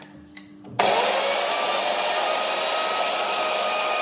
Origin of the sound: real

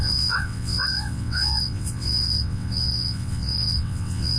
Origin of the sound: fake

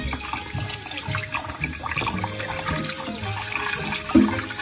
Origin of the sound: real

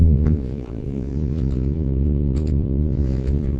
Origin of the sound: fake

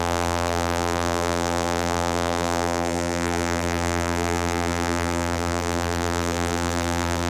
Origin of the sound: fake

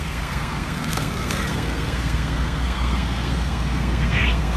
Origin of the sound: fake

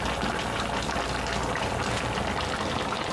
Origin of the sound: real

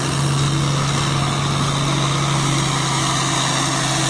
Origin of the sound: real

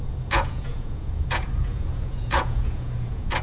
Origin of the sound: fake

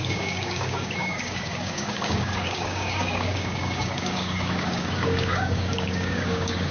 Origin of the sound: fake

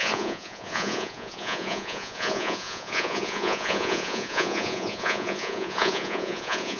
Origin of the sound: fake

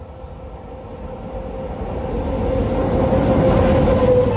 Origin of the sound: real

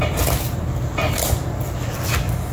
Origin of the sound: real